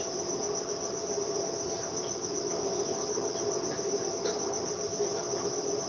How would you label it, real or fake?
real